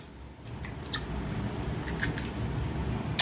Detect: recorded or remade recorded